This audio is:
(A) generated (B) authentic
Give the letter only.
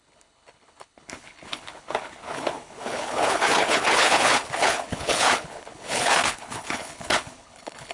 A